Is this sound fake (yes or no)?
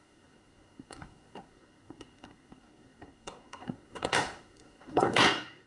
yes